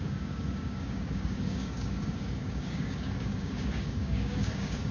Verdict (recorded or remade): remade